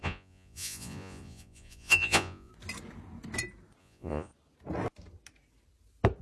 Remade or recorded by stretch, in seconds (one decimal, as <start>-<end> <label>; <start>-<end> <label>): 0.0-2.5 remade; 2.5-3.8 recorded; 3.8-4.3 remade; 4.3-6.2 recorded